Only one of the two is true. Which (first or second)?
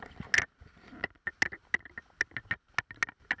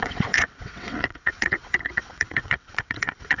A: first